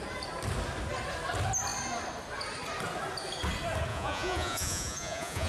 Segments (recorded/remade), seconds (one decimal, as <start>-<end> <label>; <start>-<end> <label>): 0.0-3.9 recorded; 3.9-5.5 remade